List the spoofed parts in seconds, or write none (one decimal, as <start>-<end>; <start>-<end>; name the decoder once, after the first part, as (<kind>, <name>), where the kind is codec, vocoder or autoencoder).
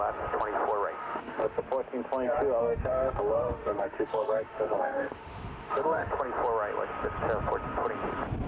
1.0-1.6 (autoencoder, DAC-VAE); 2.6-6.1